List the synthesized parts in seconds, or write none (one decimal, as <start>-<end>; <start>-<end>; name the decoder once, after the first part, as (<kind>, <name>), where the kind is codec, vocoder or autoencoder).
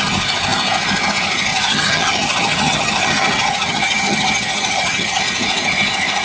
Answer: 1.5-5.2 (vocoder, HiFi-GAN)